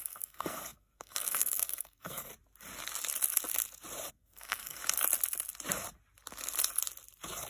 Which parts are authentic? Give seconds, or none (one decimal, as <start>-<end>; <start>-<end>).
2.3-4.1; 4.8-7.5